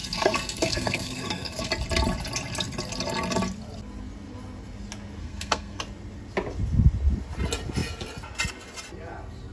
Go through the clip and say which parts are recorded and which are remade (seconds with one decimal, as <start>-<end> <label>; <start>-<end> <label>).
0.0-1.7 remade; 1.7-5.2 recorded; 5.2-5.8 remade; 5.8-9.5 recorded